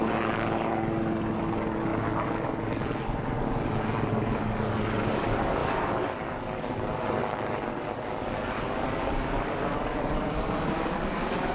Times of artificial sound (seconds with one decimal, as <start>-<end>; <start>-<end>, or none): 0.0-11.5